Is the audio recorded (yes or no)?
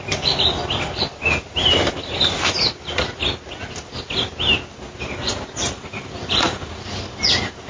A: yes